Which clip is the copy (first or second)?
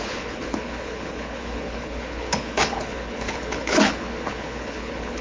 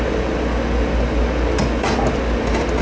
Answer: first